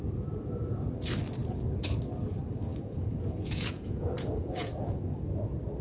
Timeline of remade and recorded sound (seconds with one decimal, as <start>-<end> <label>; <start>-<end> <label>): 0.0-2.7 recorded; 2.7-5.0 remade; 5.0-5.8 recorded